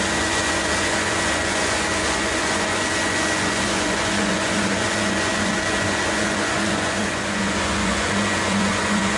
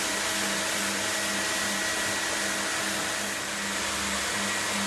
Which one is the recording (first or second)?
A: second